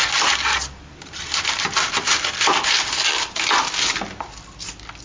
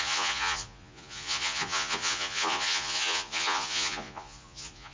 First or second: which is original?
first